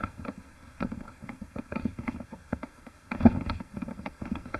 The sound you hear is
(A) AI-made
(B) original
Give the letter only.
A